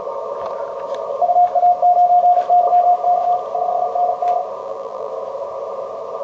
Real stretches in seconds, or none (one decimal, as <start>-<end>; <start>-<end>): 0.0-4.6; 5.1-6.2